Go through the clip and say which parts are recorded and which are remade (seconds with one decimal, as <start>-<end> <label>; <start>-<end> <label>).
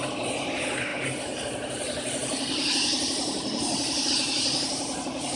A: 0.0-5.4 remade